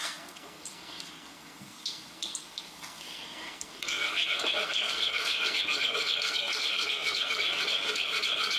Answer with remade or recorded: remade